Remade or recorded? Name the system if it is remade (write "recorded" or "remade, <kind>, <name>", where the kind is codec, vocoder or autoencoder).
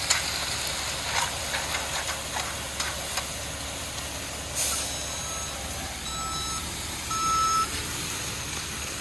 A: recorded